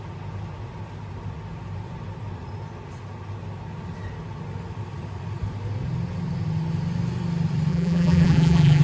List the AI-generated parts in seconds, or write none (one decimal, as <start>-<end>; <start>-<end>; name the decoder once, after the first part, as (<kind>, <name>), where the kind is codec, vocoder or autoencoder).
7.7-8.8 (vocoder, BigVGAN v2)